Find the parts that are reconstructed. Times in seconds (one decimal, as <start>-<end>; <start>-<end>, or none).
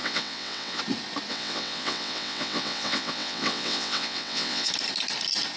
0.0-0.8; 1.3-4.7